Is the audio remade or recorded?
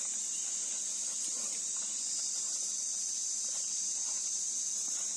recorded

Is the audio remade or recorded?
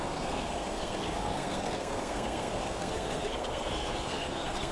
remade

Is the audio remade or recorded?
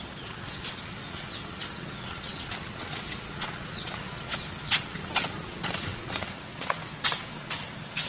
remade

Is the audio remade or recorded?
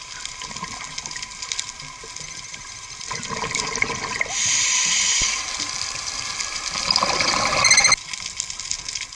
recorded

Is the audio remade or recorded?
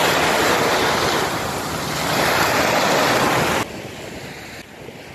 recorded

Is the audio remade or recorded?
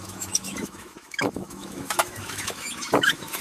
remade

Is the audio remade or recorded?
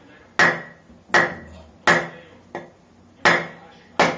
recorded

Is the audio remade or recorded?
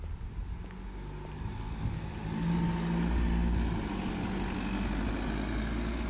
recorded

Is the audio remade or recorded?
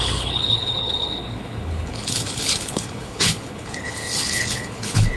remade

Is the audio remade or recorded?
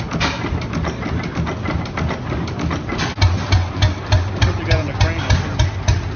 recorded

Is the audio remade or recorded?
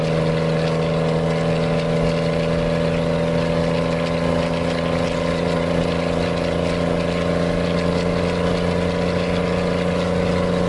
recorded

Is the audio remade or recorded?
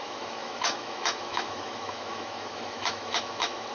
remade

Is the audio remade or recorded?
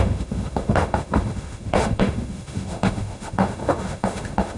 remade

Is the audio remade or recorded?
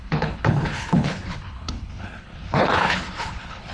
remade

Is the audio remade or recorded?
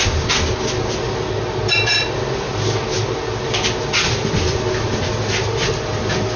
recorded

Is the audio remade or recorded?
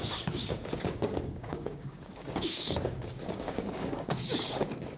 remade